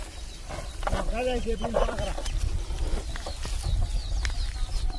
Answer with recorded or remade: remade